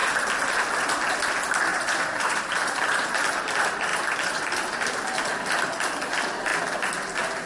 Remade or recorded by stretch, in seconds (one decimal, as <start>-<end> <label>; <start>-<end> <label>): 0.0-1.7 recorded; 1.7-3.1 remade; 3.1-3.9 recorded; 3.9-4.8 remade; 4.8-7.5 recorded